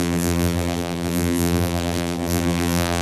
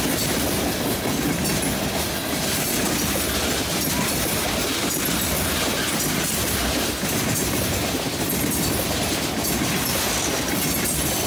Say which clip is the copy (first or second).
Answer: first